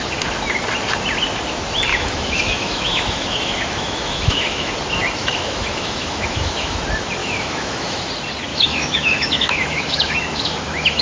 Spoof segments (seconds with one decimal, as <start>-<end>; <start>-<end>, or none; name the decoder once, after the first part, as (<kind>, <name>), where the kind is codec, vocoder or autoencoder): 1.9-4.7 (autoencoder, DAC-VAE); 5.2-6.8; 7.2-8.0; 8.5-11.0